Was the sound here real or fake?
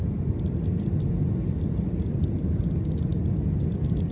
real